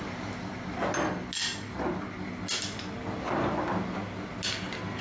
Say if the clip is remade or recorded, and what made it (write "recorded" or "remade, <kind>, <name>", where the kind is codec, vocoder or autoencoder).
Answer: recorded